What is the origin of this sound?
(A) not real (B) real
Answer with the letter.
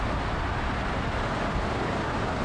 B